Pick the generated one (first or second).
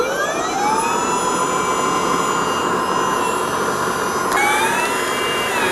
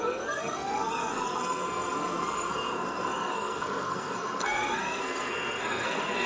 second